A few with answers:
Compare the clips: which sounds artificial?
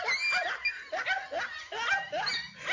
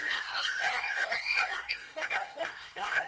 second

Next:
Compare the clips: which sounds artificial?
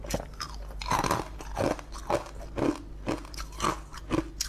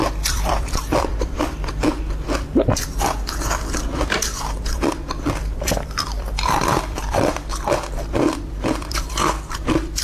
second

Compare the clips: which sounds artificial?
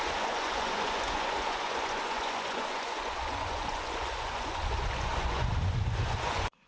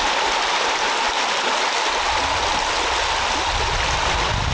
first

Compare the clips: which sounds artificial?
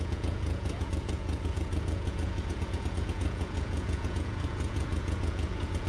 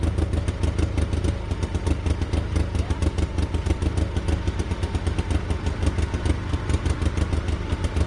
first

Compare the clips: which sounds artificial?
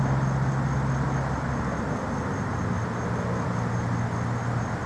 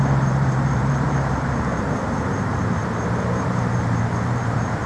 second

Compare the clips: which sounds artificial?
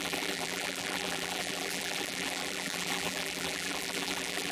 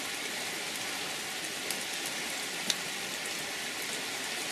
first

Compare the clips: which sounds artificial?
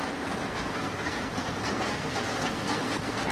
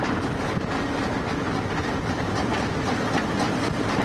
first